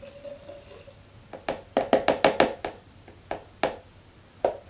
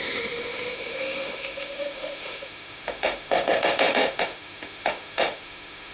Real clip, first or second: first